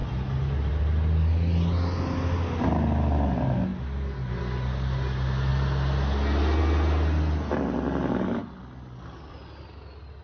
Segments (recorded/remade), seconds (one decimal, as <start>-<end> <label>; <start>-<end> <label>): 0.0-10.2 recorded

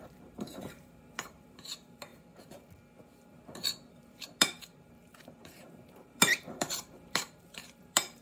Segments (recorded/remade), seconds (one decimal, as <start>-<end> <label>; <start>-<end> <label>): 0.0-2.1 remade; 2.1-4.4 recorded; 4.4-8.2 remade

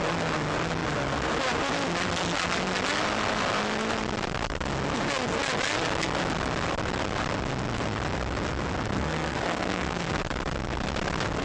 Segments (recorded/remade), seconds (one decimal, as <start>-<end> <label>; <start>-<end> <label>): 0.0-8.9 recorded; 8.9-10.2 remade; 10.2-11.4 recorded

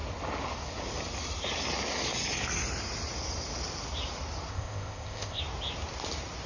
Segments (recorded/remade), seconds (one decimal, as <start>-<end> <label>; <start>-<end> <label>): 0.0-4.5 recorded; 4.5-5.4 remade; 5.4-6.5 recorded